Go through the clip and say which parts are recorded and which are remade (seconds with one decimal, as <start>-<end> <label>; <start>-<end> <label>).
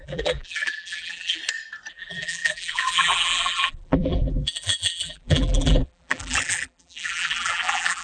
0.0-1.4 remade; 1.4-1.9 recorded; 1.9-8.0 remade